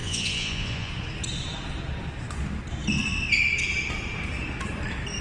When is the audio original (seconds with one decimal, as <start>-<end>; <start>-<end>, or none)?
0.9-5.2